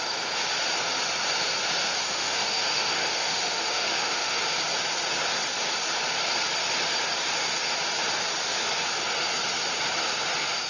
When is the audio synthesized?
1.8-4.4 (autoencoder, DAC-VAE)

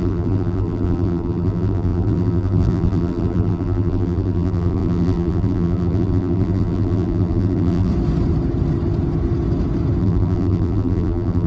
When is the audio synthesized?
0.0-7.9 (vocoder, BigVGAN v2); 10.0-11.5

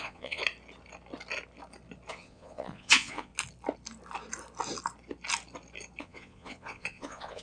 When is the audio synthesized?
0.0-0.4 (vocoder, Vocos); 2.1-3.3; 6.0-7.4

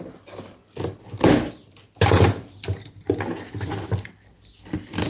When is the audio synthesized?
none

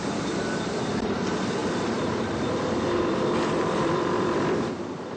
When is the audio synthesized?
1.6-4.7 (vocoder, BigVGAN v2)